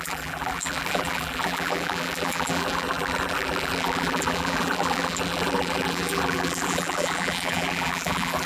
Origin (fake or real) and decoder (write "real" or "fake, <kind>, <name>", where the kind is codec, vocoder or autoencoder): fake, vocoder, BigVGAN v2